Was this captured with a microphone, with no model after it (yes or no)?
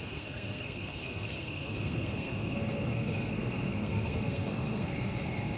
no